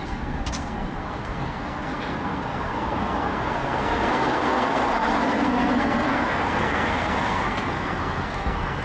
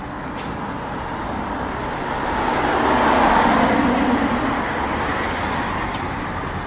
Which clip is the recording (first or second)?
second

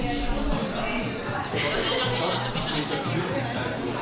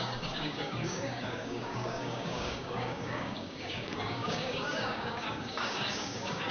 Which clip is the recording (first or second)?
first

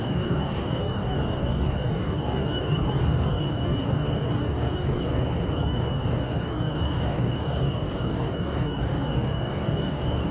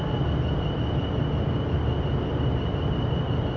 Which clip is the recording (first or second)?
second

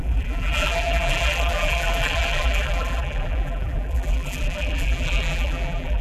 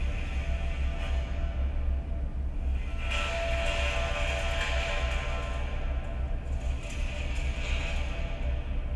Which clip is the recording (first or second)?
second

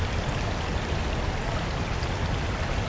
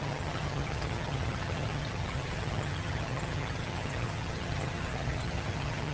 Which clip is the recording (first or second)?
first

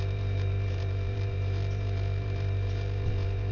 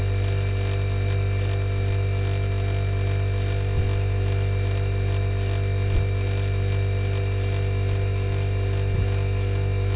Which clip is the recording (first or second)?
second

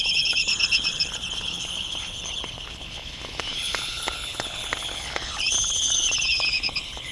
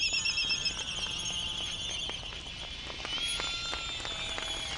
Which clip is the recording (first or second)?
second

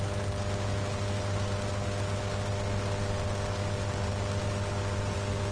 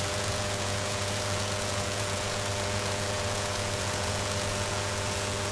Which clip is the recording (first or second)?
first